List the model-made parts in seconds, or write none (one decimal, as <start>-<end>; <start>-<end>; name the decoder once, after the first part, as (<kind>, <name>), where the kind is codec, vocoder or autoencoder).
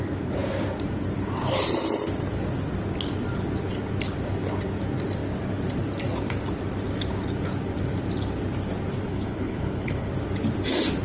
9.1-10.1 (codec, HILCodec)